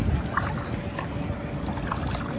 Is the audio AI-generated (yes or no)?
no